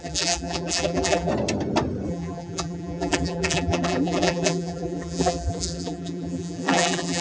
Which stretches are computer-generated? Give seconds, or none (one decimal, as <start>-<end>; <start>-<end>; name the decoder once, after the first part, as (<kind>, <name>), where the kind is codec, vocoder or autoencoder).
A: 0.0-1.3 (vocoder, BigVGAN v2); 2.1-7.2